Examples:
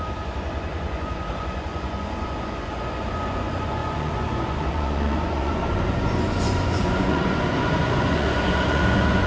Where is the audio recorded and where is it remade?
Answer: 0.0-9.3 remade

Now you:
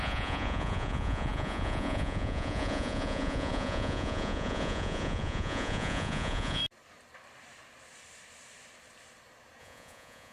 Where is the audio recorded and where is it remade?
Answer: 0.0-6.6 remade; 6.6-9.6 recorded; 9.6-10.3 remade

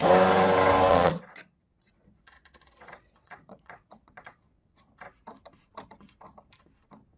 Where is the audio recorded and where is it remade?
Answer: 0.0-0.9 recorded; 0.9-4.9 remade; 4.9-7.2 recorded

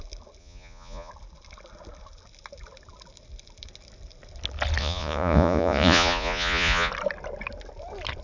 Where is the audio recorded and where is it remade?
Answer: 0.0-0.4 recorded; 0.4-1.1 remade; 1.1-4.8 recorded; 4.8-6.9 remade; 6.9-8.2 recorded